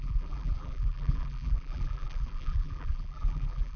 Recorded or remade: remade